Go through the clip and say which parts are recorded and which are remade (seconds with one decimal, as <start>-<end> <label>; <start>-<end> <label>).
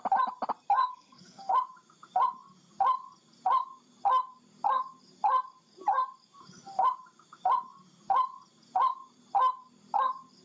0.0-0.8 recorded; 0.8-1.5 remade; 1.5-10.4 recorded